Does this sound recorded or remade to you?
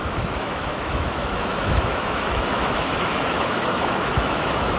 remade